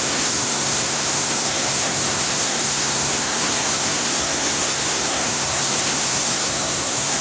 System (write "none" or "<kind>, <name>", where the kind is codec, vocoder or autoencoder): codec, SNAC